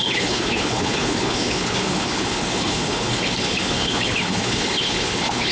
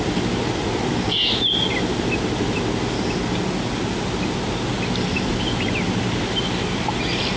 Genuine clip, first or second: second